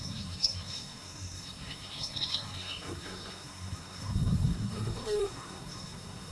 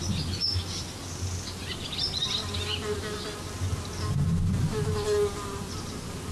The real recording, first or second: second